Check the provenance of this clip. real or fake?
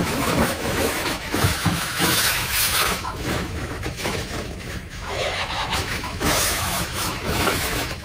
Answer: fake